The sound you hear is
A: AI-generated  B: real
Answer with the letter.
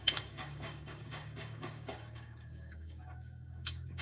A